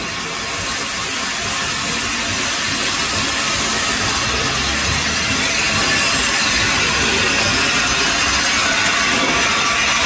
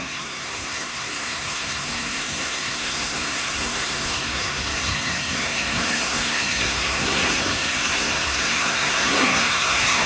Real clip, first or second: first